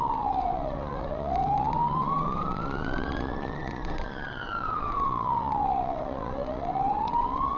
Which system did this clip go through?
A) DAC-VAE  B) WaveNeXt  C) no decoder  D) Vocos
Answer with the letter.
B